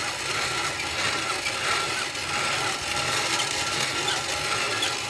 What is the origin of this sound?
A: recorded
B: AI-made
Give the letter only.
A